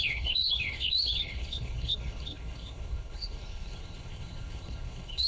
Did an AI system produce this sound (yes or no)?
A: yes